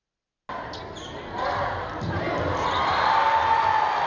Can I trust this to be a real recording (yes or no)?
yes